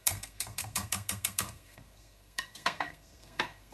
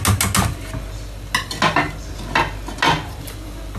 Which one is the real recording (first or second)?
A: second